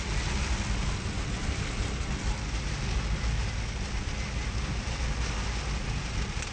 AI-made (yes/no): no